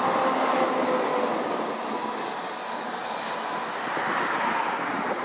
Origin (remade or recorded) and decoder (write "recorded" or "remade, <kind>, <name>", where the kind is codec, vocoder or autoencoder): recorded